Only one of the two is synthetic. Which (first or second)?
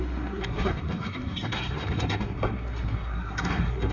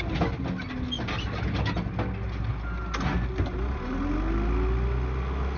first